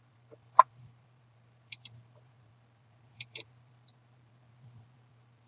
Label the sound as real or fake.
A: fake